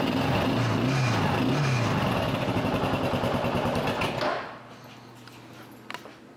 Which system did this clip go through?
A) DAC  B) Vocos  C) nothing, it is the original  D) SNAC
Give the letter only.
C